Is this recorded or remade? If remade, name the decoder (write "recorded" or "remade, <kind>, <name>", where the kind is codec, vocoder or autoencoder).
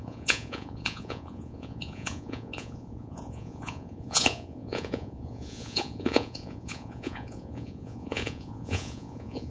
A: remade, vocoder, Vocos